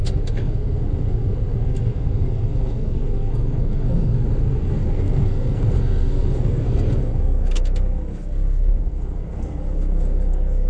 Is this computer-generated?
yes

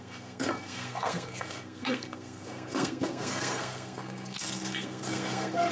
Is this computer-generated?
yes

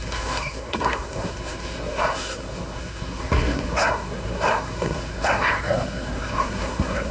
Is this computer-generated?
yes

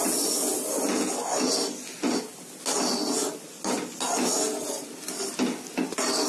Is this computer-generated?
no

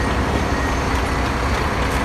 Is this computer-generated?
no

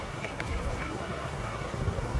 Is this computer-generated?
yes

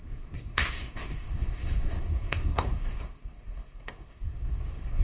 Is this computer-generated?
yes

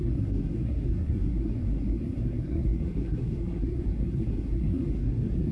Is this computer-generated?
yes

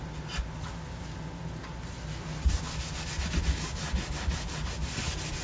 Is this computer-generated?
no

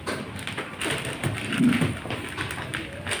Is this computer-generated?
no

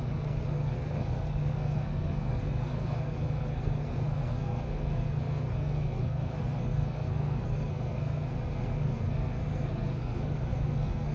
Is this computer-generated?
yes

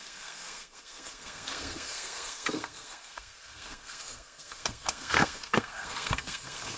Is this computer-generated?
yes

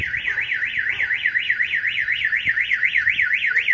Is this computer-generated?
no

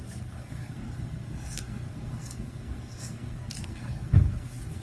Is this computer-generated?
yes